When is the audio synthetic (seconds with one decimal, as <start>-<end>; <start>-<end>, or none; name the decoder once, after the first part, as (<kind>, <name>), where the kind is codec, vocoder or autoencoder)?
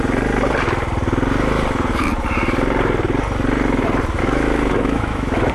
4.2-5.5 (autoencoder, DAC-VAE)